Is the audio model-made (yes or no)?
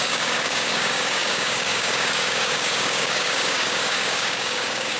yes